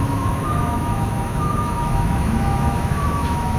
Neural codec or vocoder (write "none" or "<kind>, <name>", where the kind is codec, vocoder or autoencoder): autoencoder, DAC-VAE